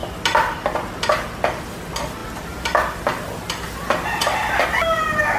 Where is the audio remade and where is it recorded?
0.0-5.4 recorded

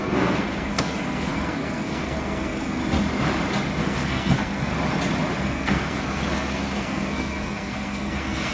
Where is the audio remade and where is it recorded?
0.0-2.8 remade; 2.8-3.8 recorded; 3.8-4.7 remade; 4.7-5.4 recorded; 5.4-8.5 remade

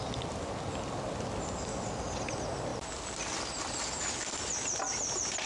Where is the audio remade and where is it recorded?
0.0-5.5 recorded

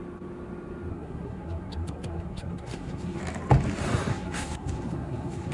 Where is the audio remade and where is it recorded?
0.0-0.9 recorded; 0.9-3.2 remade; 3.2-4.1 recorded; 4.1-5.5 remade

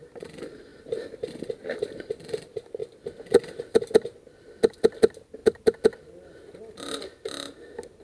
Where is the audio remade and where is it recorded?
0.0-8.0 recorded

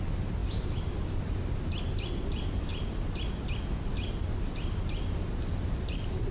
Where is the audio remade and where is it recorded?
0.0-6.3 recorded

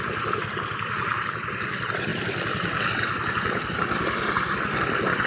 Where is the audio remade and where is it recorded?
0.0-5.3 recorded

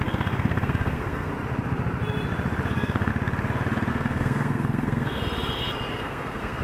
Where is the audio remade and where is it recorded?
0.0-1.3 remade; 1.3-2.7 recorded; 2.7-3.1 remade; 3.1-3.9 recorded; 3.9-5.2 remade; 5.2-5.9 recorded; 5.9-6.6 remade